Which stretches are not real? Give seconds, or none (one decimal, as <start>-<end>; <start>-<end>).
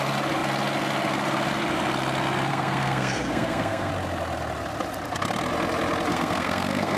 2.5-3.9; 6.1-7.0